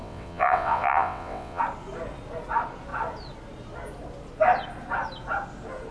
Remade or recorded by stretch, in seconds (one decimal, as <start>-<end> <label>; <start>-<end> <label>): 0.0-1.6 remade; 1.6-5.9 recorded